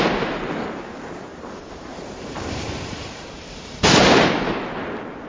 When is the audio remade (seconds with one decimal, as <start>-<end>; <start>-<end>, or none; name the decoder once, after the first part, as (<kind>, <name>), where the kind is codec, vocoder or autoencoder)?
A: 1.3-3.7 (vocoder, BigVGAN v2)